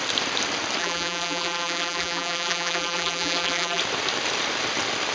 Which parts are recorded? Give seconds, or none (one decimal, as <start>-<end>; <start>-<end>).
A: 0.0-0.8; 3.8-5.1